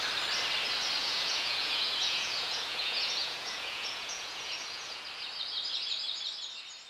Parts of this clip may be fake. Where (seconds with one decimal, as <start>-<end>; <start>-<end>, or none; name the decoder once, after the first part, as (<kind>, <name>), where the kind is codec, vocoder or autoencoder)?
1.0-5.0 (vocoder, Vocos)